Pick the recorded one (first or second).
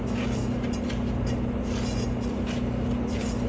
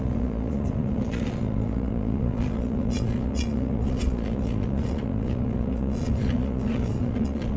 first